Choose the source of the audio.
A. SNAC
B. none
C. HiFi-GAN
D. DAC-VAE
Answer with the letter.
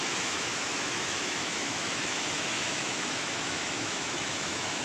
D